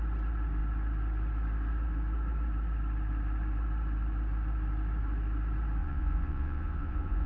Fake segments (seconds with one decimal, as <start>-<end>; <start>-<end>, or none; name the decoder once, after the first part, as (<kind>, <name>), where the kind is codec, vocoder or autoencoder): 5.8-7.3 (vocoder, Vocos)